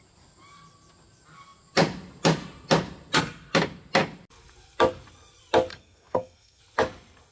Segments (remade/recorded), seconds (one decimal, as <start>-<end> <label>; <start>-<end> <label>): 0.0-5.7 recorded; 5.7-6.6 remade; 6.6-7.3 recorded